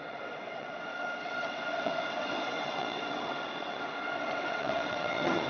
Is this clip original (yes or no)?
no